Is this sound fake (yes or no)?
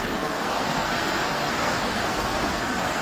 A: yes